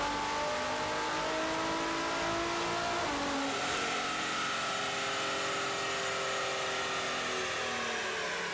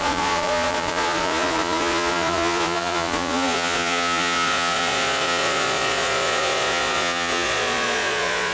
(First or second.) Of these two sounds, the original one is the first